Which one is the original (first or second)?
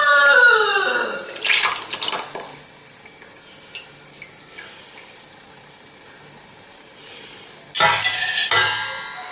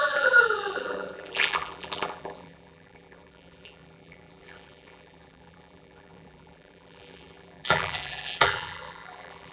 first